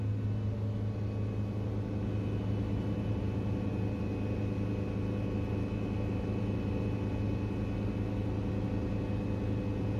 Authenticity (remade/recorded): recorded